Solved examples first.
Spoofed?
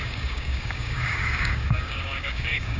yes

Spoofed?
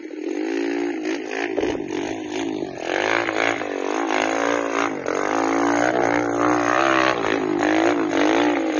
no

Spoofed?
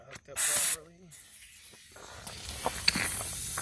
no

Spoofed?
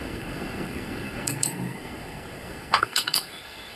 yes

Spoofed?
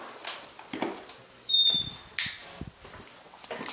no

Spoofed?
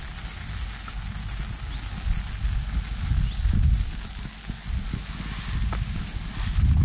no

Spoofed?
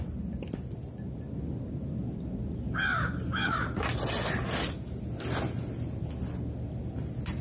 no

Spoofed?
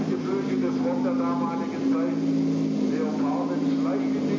no